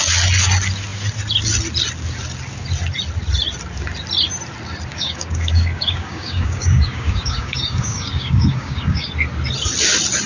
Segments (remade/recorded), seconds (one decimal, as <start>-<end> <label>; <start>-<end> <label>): 0.0-4.9 recorded; 4.9-9.1 remade; 9.1-10.3 recorded